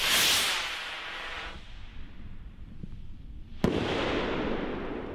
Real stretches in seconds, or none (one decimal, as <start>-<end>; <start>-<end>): 0.0-5.1